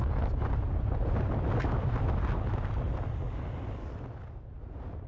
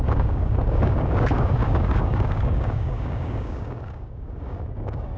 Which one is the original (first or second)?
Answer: first